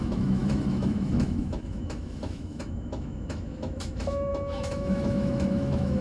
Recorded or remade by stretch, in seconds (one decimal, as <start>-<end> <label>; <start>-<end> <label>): 0.0-6.0 remade